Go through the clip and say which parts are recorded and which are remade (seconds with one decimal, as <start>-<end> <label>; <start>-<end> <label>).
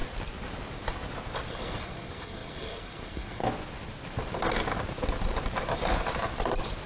0.0-1.5 recorded; 1.5-3.4 remade; 3.4-6.9 recorded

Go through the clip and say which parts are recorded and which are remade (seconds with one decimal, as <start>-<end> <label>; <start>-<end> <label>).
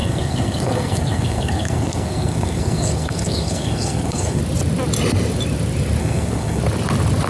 0.0-4.4 remade; 4.4-6.0 recorded; 6.0-6.6 remade; 6.6-7.3 recorded